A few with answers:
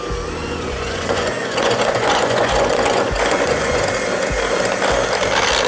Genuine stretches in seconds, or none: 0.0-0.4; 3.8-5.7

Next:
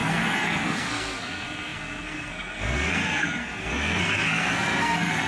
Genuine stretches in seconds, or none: none

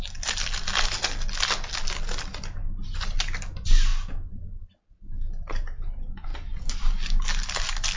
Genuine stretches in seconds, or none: 0.0-8.0

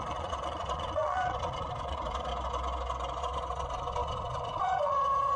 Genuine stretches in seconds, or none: 2.3-3.2

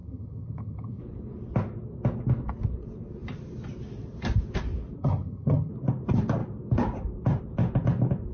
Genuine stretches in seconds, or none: 1.0-5.0; 5.7-8.3

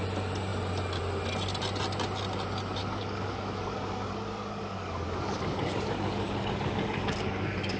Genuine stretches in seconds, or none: 0.0-2.8

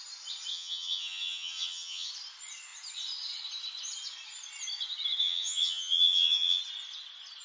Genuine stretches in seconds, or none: 0.0-0.5; 2.1-5.2; 6.6-7.4